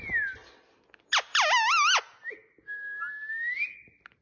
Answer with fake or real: real